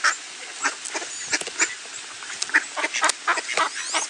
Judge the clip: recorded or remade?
recorded